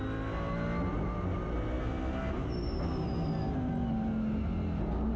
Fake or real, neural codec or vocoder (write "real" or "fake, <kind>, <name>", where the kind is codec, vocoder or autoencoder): real